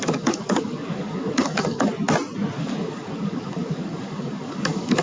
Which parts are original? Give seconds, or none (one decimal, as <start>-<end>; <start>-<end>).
1.9-2.6